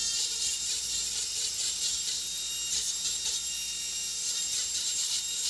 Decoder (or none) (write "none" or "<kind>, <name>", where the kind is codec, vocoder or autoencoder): none